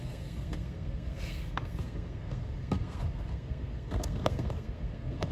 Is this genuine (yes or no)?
no